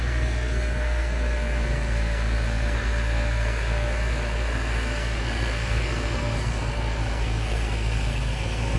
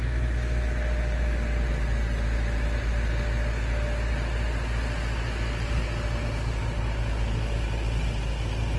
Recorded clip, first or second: second